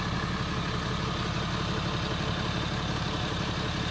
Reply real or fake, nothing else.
real